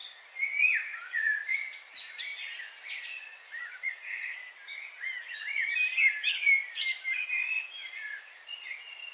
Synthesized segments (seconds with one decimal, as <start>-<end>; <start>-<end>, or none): 0.8-2.3; 3.0-4.4; 7.9-9.1